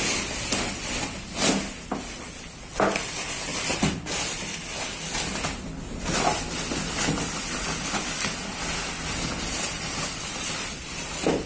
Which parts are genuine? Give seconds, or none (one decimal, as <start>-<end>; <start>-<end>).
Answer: 0.0-11.5